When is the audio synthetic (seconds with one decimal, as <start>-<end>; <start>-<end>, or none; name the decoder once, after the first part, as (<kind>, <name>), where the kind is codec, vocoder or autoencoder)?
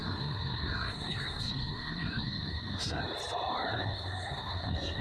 0.0-3.0 (codec, SNAC); 3.7-5.0